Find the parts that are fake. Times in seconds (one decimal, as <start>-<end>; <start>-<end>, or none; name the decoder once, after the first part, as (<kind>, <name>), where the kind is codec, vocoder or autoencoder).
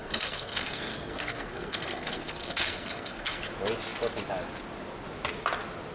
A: 0.0-3.5 (codec, SNAC)